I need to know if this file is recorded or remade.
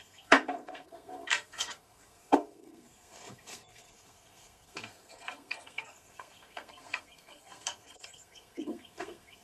remade